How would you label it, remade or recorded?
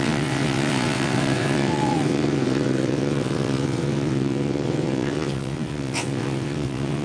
remade